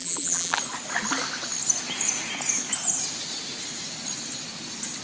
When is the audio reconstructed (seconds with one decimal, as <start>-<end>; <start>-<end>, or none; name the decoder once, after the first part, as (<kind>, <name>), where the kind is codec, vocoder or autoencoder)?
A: 0.0-0.6 (vocoder, BigVGAN v2)